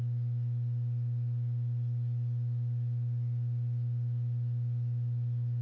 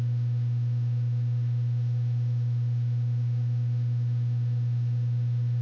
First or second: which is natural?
first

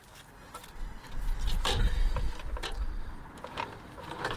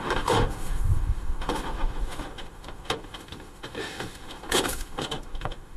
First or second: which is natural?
first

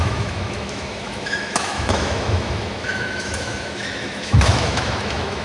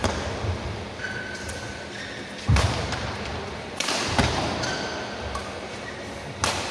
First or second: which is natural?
second